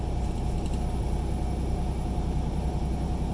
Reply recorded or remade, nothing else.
recorded